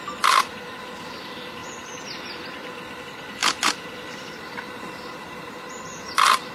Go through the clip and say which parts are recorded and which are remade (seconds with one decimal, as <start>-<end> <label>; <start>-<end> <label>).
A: 0.0-1.6 remade; 1.6-3.0 recorded; 3.0-3.4 remade; 3.4-4.3 recorded; 4.3-6.5 remade